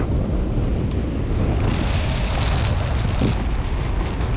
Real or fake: real